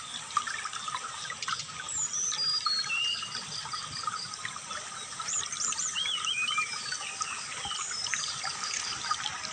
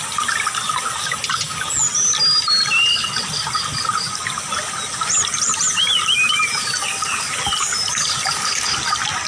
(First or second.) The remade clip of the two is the first